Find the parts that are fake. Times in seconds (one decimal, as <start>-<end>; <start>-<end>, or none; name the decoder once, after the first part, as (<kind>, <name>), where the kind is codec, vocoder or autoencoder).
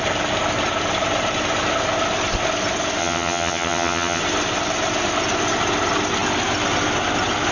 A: 3.0-4.2 (vocoder, HiFi-GAN)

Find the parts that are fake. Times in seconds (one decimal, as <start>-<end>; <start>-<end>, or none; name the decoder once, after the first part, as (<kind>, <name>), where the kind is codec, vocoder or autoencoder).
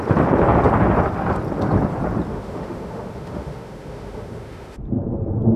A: 2.3-4.8 (autoencoder, DAC-VAE)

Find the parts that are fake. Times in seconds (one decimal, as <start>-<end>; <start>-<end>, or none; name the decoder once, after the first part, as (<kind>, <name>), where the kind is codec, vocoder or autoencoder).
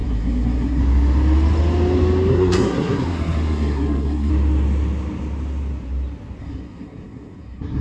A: 0.0-0.8 (codec, SNAC); 2.3-4.3; 6.4-7.8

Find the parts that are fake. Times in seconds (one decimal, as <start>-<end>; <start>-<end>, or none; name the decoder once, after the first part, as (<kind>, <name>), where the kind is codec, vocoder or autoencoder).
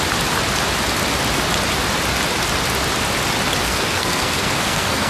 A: 3.6-5.1 (codec, SNAC)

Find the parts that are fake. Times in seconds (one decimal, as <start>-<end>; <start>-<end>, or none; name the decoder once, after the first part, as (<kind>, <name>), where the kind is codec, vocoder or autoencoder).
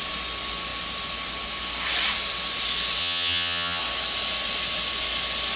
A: 3.0-3.8 (vocoder, HiFi-GAN)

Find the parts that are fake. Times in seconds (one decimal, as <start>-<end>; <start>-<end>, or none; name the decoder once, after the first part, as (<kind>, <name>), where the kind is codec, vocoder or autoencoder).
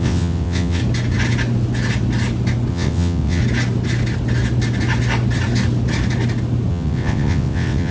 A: 0.0-0.8 (vocoder, WaveNeXt); 2.7-3.4; 6.7-7.9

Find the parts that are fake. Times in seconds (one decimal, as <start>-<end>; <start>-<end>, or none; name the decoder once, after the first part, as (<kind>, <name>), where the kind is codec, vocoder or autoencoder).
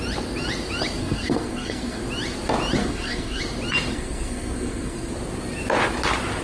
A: 1.0-2.0 (codec, SNAC); 2.8-3.4; 3.9-5.1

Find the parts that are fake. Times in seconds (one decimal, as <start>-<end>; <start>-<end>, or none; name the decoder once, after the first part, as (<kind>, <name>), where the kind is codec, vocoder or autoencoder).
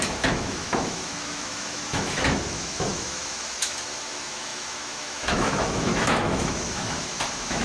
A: 0.0-7.6 (autoencoder, DAC-VAE)